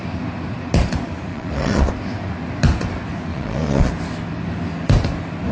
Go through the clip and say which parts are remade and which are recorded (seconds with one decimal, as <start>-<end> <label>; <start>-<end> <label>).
0.0-1.3 recorded; 1.3-1.9 remade; 1.9-3.3 recorded; 3.3-3.9 remade; 3.9-5.5 recorded